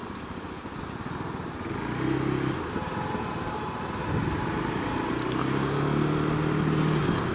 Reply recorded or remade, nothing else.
recorded